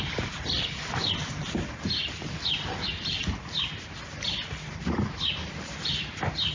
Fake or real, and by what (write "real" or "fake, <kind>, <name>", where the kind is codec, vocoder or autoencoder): real